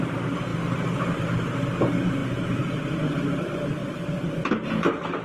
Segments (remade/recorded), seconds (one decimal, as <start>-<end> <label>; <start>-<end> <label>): 0.0-0.5 remade; 0.5-1.2 recorded; 1.2-2.2 remade; 2.2-2.9 recorded; 2.9-3.8 remade; 3.8-4.8 recorded; 4.8-5.2 remade